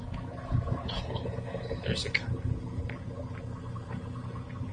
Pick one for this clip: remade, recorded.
recorded